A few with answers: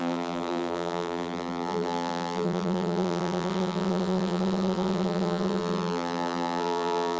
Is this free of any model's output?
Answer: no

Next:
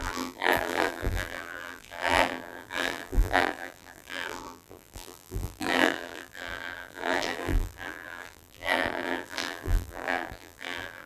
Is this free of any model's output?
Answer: no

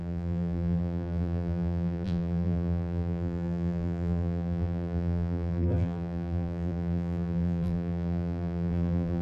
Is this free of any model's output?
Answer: no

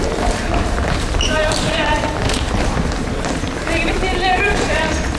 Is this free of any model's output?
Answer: no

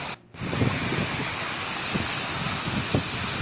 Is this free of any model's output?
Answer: no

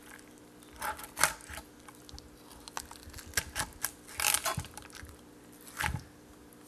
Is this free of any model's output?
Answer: yes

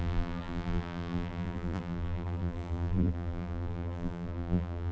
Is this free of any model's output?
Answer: no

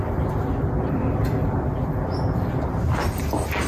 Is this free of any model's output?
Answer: yes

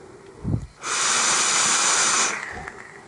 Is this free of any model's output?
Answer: no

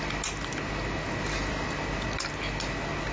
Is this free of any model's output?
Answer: yes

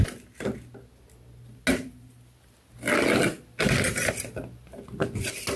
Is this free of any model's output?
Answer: yes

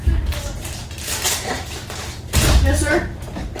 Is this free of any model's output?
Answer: yes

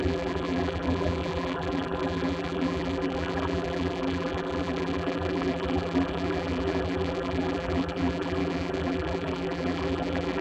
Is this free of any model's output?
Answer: no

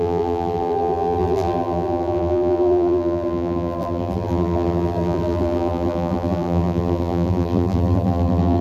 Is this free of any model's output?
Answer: no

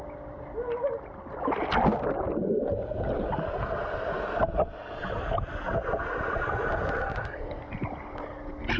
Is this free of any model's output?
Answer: yes